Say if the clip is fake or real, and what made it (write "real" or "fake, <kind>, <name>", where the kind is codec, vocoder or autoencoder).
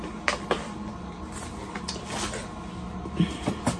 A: real